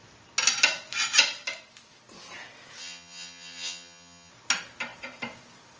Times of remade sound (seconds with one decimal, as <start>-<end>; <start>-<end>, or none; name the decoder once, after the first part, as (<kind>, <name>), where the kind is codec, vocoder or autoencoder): 2.8-4.3 (vocoder, HiFi-GAN)

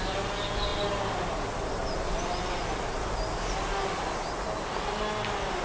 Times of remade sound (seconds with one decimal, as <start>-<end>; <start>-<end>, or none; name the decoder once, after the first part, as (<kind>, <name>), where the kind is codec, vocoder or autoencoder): none

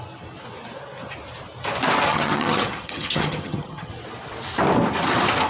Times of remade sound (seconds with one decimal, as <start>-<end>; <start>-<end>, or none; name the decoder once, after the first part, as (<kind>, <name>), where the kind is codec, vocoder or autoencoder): 2.1-3.9 (vocoder, HiFi-GAN)

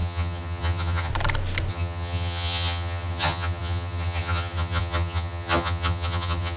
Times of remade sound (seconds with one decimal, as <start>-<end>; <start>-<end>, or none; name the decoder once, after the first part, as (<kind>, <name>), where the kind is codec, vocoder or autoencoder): 0.0-1.1 (vocoder, HiFi-GAN); 1.7-6.6

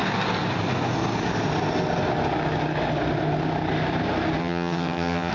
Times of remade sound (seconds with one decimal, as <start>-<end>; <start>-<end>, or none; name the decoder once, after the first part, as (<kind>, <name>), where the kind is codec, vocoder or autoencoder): 4.4-5.3 (vocoder, HiFi-GAN)